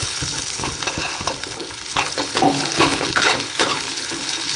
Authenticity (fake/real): fake